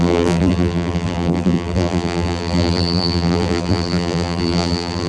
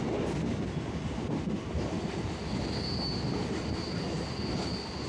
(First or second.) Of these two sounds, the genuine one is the second